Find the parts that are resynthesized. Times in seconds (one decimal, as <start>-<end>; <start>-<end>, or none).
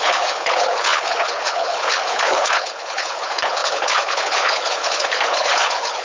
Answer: 0.0-6.0